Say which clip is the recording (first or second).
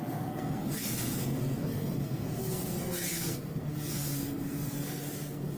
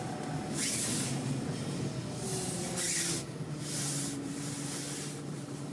second